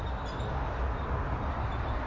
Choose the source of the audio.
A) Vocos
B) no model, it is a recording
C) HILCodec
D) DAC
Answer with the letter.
B